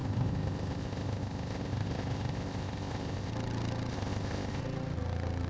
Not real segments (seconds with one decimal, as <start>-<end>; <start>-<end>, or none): 0.0-3.3; 3.9-4.6